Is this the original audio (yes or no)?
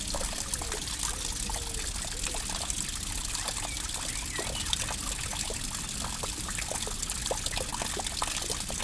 yes